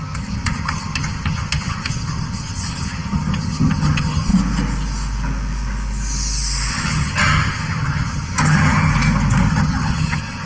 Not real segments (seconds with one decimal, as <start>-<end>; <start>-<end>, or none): 0.0-4.3; 6.7-8.9; 9.5-10.4